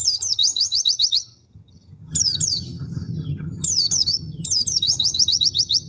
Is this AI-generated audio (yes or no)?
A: yes